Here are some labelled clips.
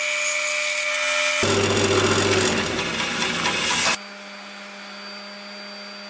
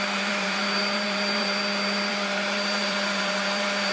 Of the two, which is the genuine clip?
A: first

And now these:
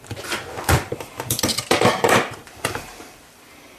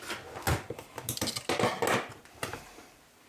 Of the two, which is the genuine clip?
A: second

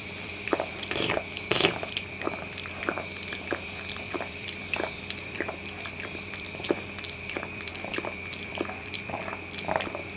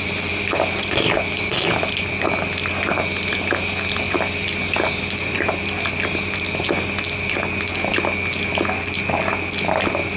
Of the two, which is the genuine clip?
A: second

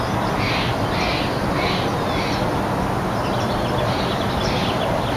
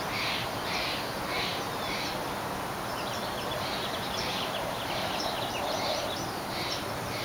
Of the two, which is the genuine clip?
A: first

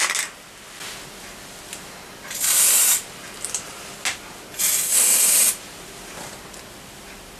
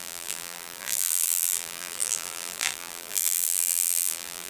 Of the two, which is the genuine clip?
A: first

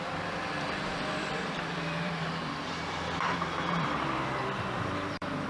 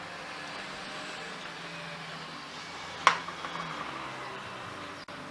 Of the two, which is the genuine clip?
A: second